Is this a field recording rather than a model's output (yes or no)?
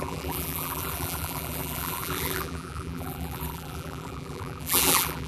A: no